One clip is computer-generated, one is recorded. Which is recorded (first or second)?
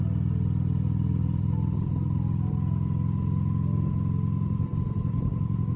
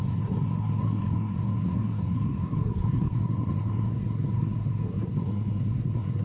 first